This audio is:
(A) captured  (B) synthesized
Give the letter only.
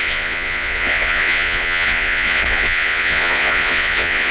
B